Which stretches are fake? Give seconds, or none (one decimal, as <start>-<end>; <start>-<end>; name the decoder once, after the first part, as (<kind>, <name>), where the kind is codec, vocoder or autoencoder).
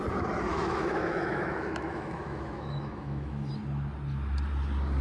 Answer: 0.5-3.5 (autoencoder, DAC-VAE)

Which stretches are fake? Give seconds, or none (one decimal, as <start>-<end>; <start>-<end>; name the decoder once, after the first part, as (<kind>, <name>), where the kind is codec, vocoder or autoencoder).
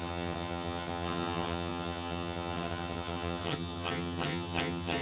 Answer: 0.0-5.0 (vocoder, HiFi-GAN)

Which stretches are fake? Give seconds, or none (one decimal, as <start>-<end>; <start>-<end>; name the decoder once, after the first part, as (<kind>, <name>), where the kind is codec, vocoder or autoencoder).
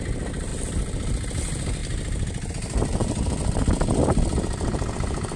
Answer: none